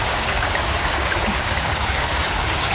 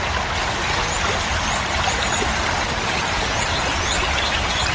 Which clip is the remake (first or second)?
first